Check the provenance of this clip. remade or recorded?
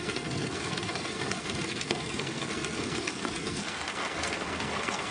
remade